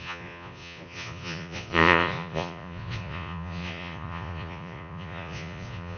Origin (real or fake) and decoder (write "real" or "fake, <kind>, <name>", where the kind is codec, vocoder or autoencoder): fake, vocoder, Vocos